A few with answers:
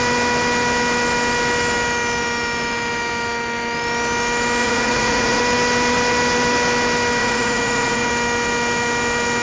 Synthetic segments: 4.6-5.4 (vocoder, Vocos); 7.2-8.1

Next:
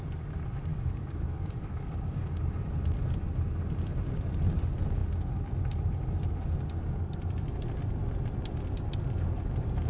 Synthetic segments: 0.7-2.4 (codec, DAC)

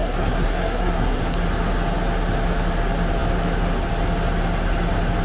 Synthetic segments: 0.0-1.2 (codec, SNAC)

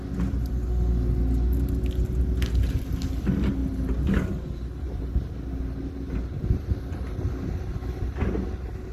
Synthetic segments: none

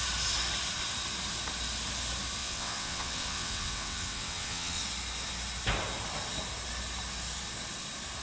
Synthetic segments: 2.4-4.8 (vocoder, WaveNeXt)